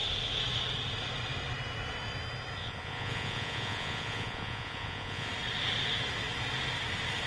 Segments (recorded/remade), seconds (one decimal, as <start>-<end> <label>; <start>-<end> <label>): 0.0-2.6 recorded; 2.6-5.3 remade; 5.3-7.3 recorded